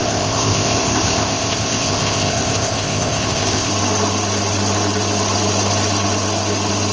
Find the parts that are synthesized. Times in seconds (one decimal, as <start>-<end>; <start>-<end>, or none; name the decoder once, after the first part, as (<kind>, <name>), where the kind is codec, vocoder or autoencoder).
0.0-3.7 (codec, ZipCodec)